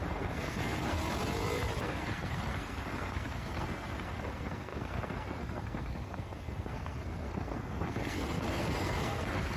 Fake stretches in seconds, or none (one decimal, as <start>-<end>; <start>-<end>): 0.0-1.0; 1.8-9.6

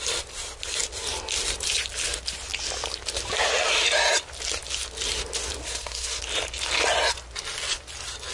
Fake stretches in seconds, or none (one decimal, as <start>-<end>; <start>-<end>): 5.6-6.2

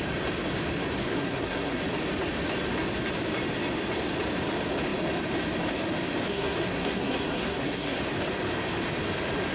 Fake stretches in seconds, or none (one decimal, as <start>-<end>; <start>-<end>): 1.0-1.8; 6.3-8.0